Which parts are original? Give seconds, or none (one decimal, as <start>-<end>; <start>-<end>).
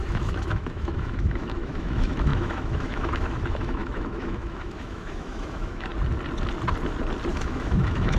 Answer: 5.9-7.3